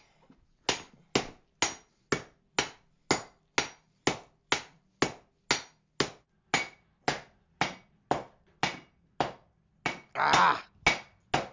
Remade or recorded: recorded